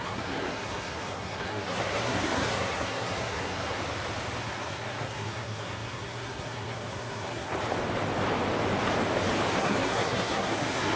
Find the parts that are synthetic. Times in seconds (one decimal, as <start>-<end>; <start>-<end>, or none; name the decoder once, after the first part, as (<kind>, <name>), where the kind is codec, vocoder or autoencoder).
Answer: 0.0-3.8 (codec, SNAC); 4.4-7.5; 9.6-11.0